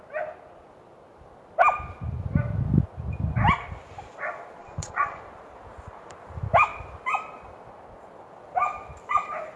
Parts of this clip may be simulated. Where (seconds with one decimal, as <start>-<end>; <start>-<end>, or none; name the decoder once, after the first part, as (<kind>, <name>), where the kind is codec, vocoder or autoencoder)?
4.6-5.2 (vocoder, Vocos)

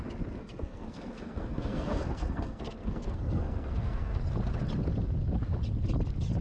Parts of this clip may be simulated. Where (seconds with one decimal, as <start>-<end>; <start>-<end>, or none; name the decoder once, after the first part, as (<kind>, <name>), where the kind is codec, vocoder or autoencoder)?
0.4-4.2 (codec, SNAC)

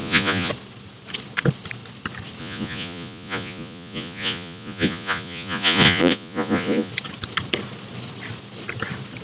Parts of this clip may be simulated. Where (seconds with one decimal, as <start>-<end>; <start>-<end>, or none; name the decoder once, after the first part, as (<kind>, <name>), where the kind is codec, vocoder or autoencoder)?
0.0-0.5 (vocoder, Vocos); 2.4-6.9

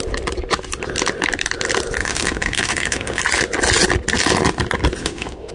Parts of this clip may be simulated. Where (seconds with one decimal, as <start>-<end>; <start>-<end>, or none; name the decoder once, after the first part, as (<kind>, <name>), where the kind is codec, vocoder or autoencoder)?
2.0-3.2 (autoencoder, DAC-VAE); 5.0-5.5